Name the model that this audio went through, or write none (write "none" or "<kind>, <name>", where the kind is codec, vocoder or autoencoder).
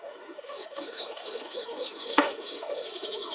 autoencoder, DAC-VAE